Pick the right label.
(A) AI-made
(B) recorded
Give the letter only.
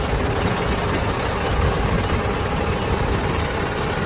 B